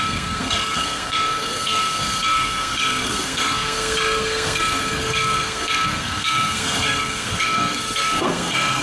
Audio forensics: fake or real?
fake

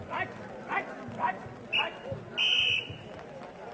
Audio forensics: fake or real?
real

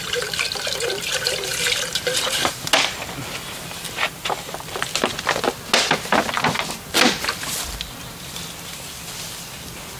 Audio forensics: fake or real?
real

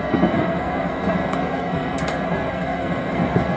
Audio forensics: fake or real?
fake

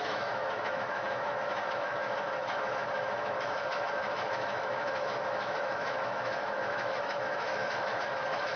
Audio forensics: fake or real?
fake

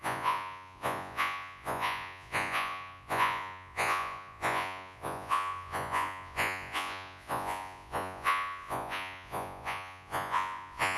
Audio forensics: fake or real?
fake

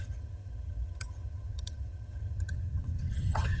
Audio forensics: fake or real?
fake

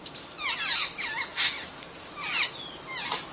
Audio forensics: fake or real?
real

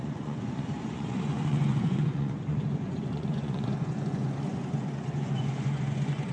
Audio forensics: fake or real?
fake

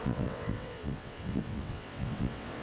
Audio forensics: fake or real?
fake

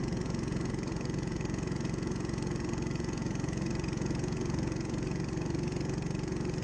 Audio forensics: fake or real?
fake